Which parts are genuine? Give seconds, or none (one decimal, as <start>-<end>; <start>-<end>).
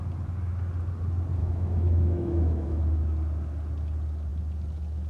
0.0-1.4; 2.8-5.1